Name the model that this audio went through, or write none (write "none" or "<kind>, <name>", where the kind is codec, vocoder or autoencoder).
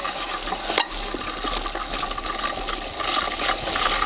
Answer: none